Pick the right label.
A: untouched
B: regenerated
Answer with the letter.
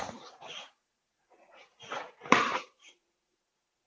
B